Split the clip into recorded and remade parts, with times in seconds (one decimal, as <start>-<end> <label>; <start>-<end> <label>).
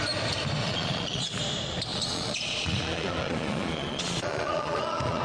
0.0-0.6 recorded; 0.6-1.4 remade; 1.4-1.9 recorded; 1.9-5.2 remade